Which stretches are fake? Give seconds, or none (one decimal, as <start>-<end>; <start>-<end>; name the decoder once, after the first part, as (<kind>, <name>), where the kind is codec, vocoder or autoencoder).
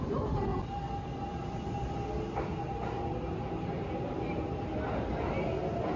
none